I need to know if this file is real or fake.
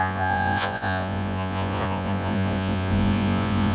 fake